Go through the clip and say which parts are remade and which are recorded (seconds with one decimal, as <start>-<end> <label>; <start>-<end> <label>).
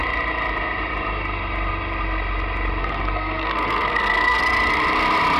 0.0-2.8 recorded; 2.8-4.4 remade; 4.4-5.4 recorded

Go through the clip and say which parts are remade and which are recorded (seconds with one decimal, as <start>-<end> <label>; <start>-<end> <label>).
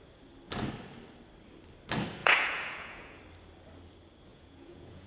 0.0-2.2 recorded; 2.2-3.2 remade; 3.2-4.3 recorded; 4.3-5.1 remade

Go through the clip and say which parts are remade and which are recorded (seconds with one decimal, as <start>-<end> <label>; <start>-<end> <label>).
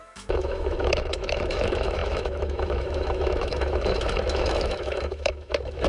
0.0-5.9 remade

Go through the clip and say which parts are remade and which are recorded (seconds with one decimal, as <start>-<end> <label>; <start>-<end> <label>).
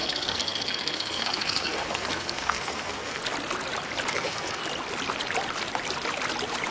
0.0-3.2 remade; 3.2-4.1 recorded; 4.1-4.6 remade; 4.6-6.7 recorded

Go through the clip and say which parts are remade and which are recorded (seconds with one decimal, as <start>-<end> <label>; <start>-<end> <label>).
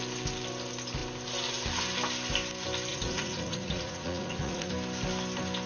0.0-2.9 recorded; 2.9-4.7 remade; 4.7-5.7 recorded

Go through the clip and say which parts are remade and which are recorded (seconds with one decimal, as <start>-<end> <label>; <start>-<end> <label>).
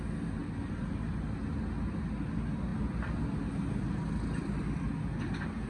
0.0-5.7 recorded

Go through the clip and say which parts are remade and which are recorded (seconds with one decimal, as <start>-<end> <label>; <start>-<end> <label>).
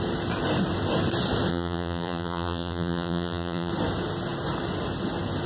0.0-1.5 recorded; 1.5-3.7 remade; 3.7-5.5 recorded